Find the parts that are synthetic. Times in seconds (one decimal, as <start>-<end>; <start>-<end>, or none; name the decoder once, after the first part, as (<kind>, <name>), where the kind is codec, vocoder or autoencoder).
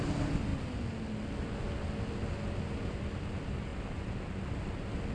none